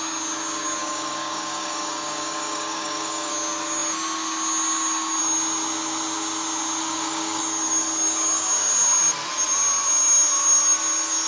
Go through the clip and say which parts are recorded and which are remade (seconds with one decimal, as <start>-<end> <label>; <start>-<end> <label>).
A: 0.0-0.8 recorded; 0.8-3.3 remade; 3.3-6.8 recorded; 6.8-7.4 remade; 7.4-11.3 recorded